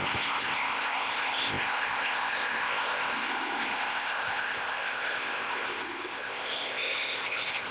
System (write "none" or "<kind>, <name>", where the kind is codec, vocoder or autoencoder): codec, ZipCodec